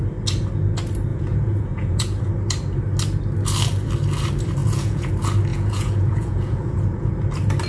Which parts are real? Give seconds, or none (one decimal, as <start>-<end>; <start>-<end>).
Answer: 0.0-1.1; 2.3-4.6; 5.1-5.5; 7.1-7.7